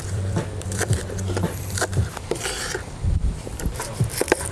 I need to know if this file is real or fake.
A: fake